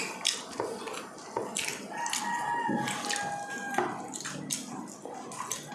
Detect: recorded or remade recorded